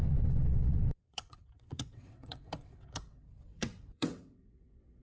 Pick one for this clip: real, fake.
fake